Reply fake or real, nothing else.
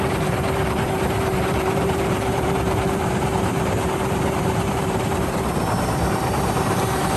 fake